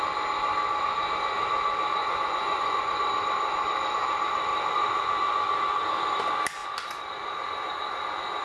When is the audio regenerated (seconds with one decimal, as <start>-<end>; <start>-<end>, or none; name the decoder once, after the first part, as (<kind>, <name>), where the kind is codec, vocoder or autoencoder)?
2.0-2.9 (vocoder, Vocos)